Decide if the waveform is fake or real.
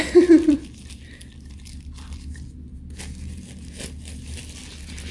real